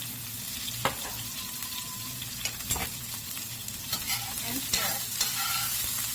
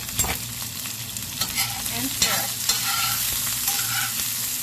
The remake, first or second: first